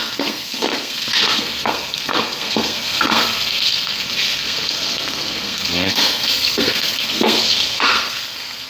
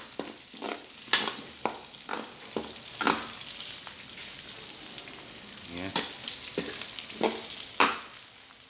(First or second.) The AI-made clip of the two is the first